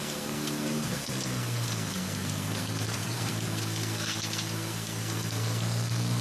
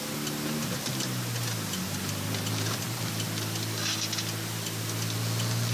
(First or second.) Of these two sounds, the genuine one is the second